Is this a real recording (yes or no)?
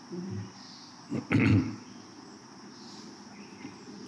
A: yes